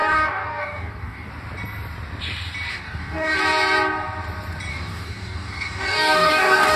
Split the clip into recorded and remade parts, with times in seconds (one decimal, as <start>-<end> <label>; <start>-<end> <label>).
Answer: 0.0-1.3 remade; 1.3-2.7 recorded; 2.7-3.4 remade; 3.4-4.7 recorded; 4.7-6.8 remade